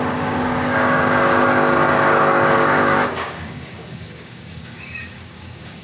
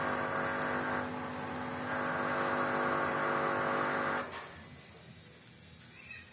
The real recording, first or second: second